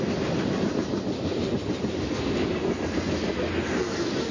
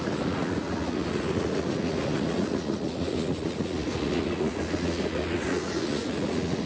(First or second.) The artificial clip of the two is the second